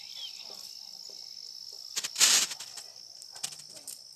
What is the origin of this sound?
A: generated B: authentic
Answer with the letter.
B